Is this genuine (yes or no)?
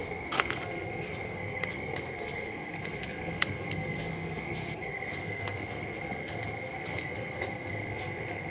no